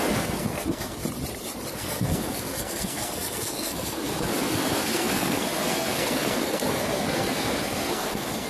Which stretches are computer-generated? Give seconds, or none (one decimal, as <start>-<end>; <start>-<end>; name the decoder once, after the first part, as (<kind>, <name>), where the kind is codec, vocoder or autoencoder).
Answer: 0.0-1.0 (codec, SNAC); 1.7-8.5